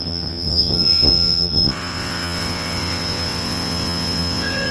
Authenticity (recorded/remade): remade